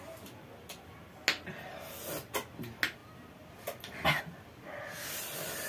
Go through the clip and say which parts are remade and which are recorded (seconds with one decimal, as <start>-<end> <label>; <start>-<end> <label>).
0.0-5.7 recorded